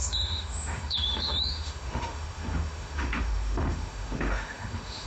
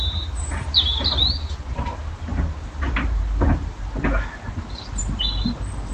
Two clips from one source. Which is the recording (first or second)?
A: second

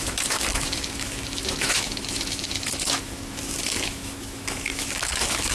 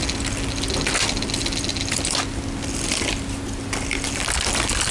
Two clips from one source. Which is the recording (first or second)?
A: second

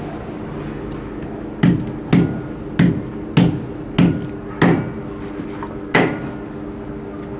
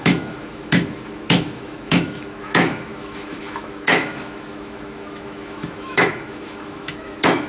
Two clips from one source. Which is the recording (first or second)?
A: first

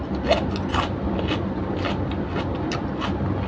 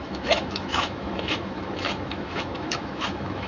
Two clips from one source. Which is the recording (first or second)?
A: first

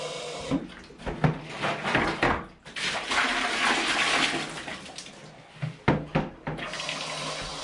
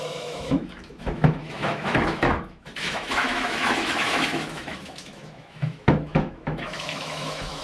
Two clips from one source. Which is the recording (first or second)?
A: first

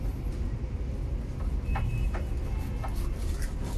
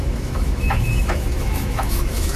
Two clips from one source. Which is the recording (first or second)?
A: first